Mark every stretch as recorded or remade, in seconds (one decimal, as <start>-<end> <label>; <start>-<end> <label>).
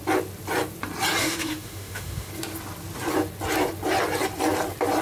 0.0-1.2 recorded; 1.2-2.3 remade; 2.3-5.0 recorded